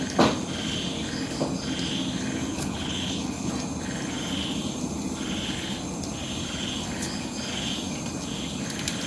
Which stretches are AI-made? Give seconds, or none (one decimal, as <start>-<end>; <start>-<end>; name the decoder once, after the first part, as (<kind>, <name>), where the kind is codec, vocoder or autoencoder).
2.5-3.5 (codec, HILCodec)